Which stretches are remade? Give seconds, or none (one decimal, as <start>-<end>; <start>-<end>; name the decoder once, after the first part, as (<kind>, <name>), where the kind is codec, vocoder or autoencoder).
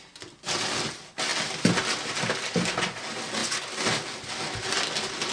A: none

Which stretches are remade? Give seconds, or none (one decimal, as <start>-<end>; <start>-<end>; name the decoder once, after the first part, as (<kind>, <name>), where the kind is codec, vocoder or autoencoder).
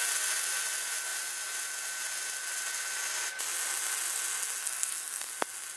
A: 4.6-5.3 (codec, SNAC)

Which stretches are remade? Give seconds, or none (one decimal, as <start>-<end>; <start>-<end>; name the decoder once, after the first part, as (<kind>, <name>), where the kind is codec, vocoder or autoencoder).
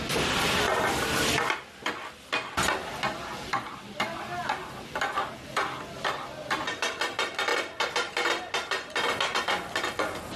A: none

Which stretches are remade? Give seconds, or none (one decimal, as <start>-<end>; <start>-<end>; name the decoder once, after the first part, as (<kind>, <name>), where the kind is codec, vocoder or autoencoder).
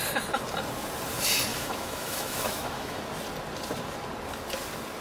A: 1.5-3.0 (autoencoder, DAC-VAE)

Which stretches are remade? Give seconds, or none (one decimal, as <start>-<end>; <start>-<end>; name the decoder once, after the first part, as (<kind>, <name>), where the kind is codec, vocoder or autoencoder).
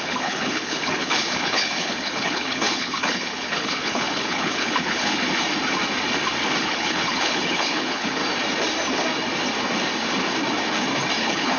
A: 0.0-5.2 (codec, HILCodec); 6.6-8.2; 11.2-11.6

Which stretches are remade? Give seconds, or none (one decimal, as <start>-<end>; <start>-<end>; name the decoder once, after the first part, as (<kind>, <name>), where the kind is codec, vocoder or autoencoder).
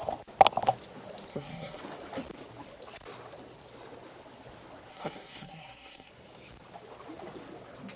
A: 1.3-1.8 (codec, SNAC); 4.9-6.1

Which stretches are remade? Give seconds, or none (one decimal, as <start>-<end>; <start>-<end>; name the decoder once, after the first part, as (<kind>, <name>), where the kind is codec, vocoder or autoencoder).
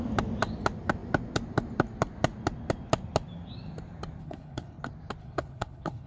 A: 4.2-4.8 (codec, HILCodec); 5.2-6.1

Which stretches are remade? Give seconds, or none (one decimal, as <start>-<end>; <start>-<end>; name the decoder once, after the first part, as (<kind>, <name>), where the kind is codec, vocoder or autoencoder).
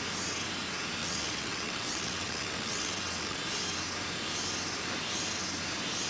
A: 1.0-3.4 (vocoder, WaveNeXt)